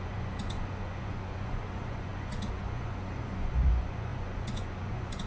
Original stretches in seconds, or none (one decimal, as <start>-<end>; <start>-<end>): none